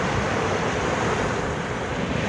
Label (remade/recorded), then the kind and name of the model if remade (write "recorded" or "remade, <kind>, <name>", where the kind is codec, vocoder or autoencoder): recorded